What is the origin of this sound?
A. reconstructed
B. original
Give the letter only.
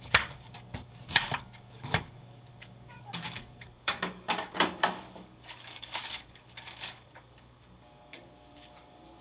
A